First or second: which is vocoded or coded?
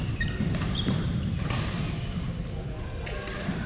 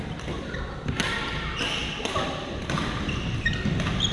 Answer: first